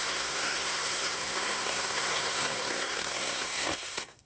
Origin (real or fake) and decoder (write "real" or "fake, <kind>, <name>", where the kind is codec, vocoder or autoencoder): fake, codec, SNAC